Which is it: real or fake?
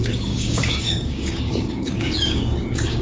fake